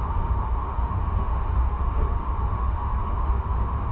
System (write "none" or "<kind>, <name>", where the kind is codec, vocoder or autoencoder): autoencoder, DAC-VAE